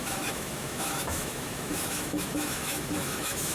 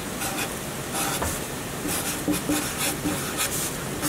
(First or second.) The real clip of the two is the second